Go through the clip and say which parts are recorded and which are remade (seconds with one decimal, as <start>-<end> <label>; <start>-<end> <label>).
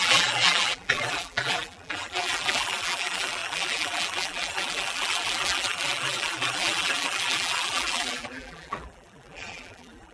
0.0-10.1 remade